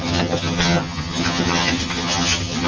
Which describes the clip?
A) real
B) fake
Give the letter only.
B